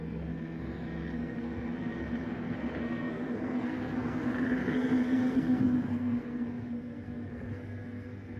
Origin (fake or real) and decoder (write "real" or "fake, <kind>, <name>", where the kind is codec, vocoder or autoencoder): fake, codec, SNAC